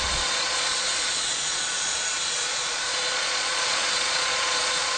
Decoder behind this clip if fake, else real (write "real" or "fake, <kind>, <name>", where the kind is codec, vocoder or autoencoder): fake, vocoder, Vocos